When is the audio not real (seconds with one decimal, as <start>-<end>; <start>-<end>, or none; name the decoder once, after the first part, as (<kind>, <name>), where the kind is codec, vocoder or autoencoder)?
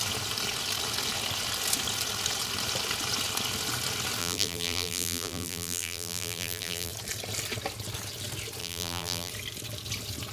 4.2-6.9 (vocoder, BigVGAN v2); 8.6-9.3